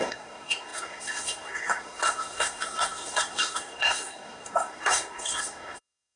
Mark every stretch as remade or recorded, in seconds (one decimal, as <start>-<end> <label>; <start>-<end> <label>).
0.0-6.2 remade

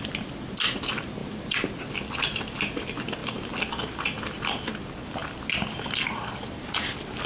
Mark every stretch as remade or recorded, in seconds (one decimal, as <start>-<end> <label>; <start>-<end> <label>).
0.0-7.3 recorded

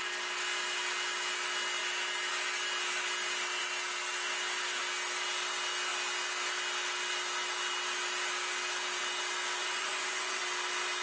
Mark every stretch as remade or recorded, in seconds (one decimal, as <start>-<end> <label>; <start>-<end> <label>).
0.0-9.6 recorded; 9.6-10.4 remade; 10.4-11.0 recorded

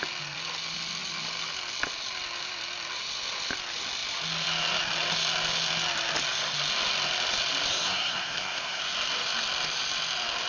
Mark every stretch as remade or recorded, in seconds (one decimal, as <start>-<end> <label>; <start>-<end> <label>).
0.0-7.7 recorded; 7.7-8.8 remade; 8.8-10.5 recorded

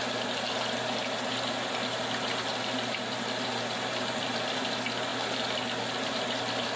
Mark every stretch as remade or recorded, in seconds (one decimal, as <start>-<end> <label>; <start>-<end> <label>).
0.0-6.8 recorded

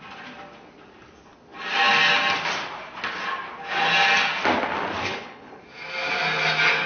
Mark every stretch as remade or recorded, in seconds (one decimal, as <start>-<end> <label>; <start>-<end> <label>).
0.0-5.0 recorded; 5.0-5.6 remade; 5.6-6.9 recorded

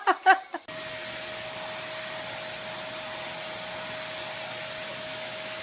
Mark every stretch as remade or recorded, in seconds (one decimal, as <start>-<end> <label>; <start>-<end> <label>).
0.0-4.9 recorded; 4.9-5.6 remade